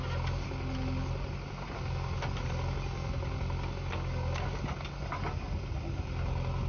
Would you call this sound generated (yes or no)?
no